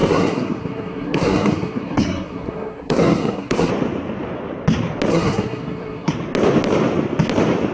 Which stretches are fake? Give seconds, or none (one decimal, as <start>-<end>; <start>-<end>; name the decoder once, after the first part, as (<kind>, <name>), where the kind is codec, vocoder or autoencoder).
0.0-3.7 (codec, SNAC); 5.1-6.1